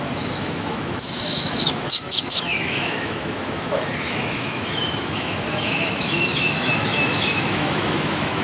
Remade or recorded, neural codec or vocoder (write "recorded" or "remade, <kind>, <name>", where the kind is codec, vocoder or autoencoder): remade, autoencoder, DAC-VAE